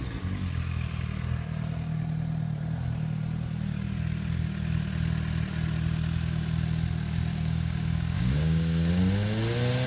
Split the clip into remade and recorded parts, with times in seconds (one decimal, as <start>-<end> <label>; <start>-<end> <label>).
0.0-7.3 recorded; 7.3-8.9 remade; 8.9-9.9 recorded